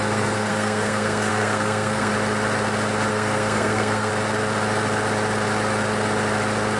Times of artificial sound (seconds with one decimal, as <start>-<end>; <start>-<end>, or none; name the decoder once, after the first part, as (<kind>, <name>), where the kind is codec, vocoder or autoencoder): 0.0-2.1 (codec, SNAC); 3.1-4.1